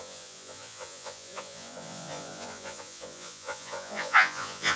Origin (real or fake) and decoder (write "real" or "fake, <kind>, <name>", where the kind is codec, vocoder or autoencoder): fake, vocoder, Vocos